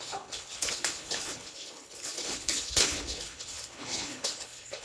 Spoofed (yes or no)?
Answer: yes